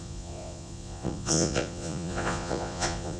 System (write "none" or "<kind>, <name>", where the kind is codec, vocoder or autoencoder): vocoder, Vocos